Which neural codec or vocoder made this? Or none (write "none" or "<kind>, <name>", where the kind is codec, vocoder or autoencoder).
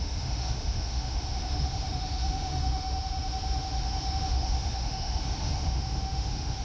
autoencoder, DAC-VAE